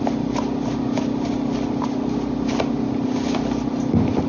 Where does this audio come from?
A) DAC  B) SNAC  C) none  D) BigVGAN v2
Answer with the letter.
C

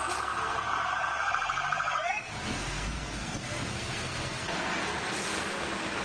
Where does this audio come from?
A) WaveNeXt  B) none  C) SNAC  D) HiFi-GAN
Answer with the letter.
C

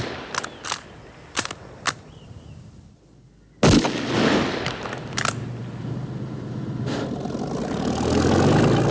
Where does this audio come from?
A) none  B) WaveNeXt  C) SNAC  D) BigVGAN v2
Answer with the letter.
A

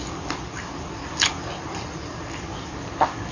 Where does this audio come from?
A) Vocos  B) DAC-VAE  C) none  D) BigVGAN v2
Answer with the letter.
C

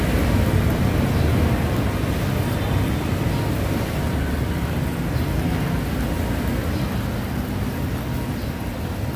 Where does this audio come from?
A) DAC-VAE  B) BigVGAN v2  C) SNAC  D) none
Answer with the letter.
D